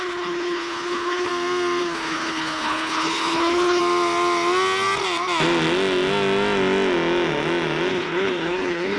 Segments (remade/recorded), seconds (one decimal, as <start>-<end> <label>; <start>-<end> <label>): 0.0-1.3 remade; 1.3-1.8 recorded; 1.8-3.8 remade; 3.8-7.9 recorded; 7.9-9.0 remade